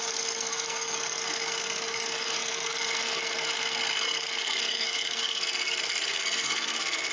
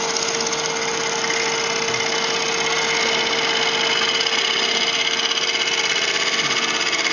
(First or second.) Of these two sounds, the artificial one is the first